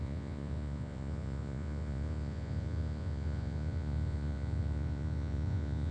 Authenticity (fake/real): fake